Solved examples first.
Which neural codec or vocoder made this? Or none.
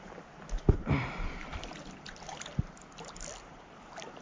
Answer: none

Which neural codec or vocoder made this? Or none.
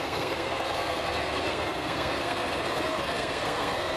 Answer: codec, SNAC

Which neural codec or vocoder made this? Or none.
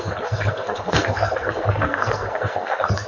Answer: codec, SNAC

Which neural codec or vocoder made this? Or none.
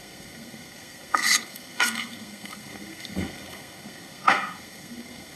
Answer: codec, SNAC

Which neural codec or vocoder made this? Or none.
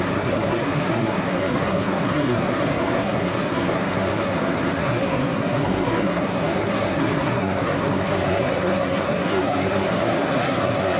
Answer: codec, SNAC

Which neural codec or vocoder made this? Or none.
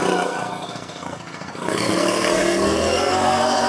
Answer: codec, SNAC